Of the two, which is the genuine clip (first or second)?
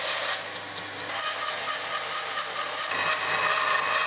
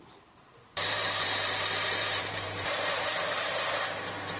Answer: first